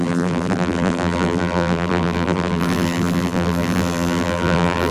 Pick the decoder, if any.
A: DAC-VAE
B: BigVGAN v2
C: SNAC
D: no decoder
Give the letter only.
B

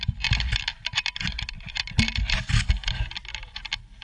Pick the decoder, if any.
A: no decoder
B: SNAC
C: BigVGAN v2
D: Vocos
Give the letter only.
A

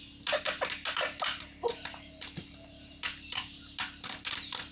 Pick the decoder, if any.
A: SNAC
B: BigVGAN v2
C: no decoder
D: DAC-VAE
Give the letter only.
C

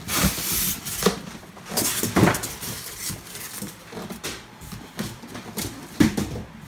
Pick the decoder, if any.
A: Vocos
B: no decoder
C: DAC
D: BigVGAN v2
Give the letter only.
D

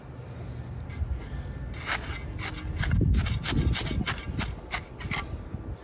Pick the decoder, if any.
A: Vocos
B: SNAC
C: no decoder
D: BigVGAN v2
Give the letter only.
C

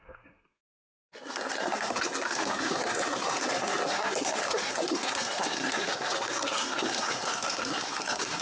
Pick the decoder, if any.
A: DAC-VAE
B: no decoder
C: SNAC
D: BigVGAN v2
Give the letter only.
C